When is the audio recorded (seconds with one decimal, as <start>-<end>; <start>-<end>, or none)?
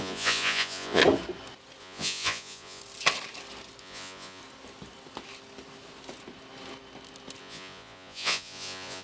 1.0-1.8; 2.8-3.8; 4.4-7.4